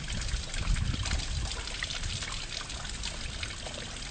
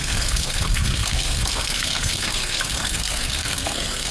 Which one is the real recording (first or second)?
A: first